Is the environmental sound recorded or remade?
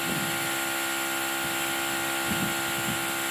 recorded